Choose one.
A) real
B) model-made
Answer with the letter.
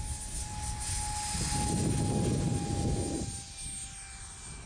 A